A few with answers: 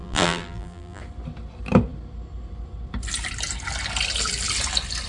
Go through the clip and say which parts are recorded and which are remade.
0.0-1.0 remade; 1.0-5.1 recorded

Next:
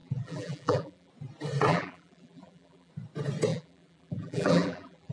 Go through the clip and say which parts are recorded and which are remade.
0.0-1.1 remade; 1.1-1.7 recorded; 1.7-2.9 remade; 2.9-3.5 recorded; 3.5-5.1 remade

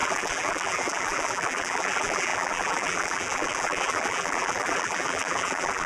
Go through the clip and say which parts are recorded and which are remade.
0.0-5.9 remade

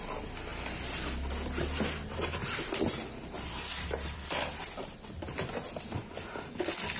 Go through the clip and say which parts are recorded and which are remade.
0.0-0.5 recorded; 0.5-1.0 remade; 1.0-2.4 recorded; 2.4-6.6 remade; 6.6-7.0 recorded

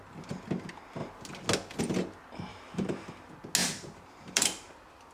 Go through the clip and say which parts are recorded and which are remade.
0.0-2.5 recorded; 2.5-3.1 remade; 3.1-3.6 recorded; 3.6-4.4 remade; 4.4-5.1 recorded